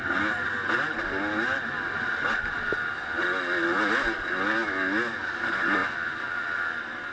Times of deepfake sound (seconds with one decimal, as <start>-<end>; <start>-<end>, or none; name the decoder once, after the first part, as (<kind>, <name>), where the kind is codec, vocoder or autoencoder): none